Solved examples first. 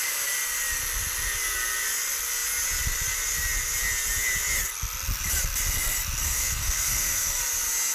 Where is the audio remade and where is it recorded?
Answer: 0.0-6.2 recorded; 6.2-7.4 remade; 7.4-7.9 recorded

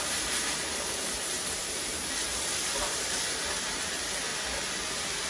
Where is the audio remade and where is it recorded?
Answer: 0.0-4.3 remade; 4.3-5.3 recorded